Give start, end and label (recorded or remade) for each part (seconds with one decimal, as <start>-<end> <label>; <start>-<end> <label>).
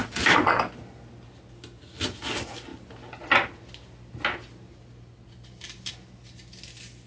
0.0-7.1 recorded